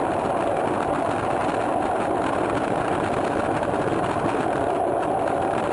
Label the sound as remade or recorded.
recorded